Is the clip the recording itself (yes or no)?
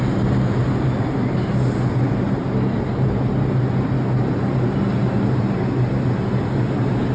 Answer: yes